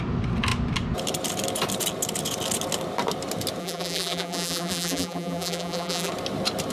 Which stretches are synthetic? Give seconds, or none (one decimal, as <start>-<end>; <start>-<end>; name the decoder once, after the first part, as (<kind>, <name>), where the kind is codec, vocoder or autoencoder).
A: 3.6-6.1 (vocoder, BigVGAN v2)